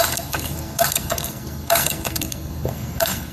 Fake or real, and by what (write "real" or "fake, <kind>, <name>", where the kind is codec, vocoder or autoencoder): fake, codec, SNAC